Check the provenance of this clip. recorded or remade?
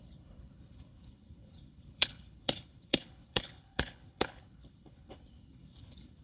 remade